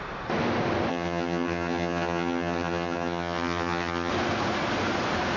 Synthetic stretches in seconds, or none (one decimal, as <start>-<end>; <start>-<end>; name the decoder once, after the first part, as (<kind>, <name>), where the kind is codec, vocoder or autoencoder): 0.9-4.1 (vocoder, HiFi-GAN)